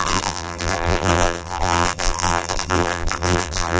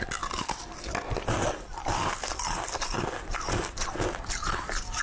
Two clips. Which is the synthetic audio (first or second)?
first